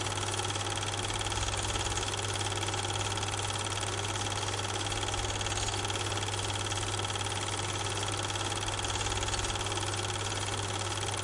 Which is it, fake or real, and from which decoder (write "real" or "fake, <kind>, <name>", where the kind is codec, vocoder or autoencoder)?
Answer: real